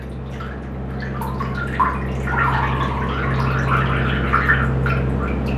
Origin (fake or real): real